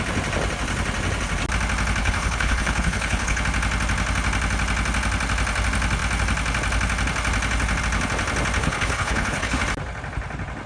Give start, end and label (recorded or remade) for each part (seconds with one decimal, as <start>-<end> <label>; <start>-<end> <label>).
0.0-2.0 recorded; 2.0-3.4 remade; 3.4-8.6 recorded; 8.6-9.6 remade; 9.6-10.7 recorded